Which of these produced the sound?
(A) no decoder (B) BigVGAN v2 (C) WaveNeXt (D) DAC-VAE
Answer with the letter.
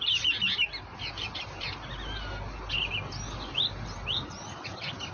A